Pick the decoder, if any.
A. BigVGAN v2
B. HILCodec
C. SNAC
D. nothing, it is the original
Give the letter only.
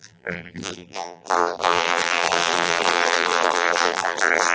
A